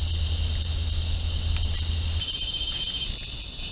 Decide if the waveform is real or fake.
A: real